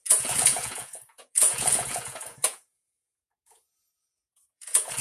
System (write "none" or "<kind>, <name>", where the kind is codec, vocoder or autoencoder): vocoder, Vocos